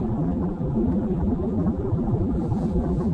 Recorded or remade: remade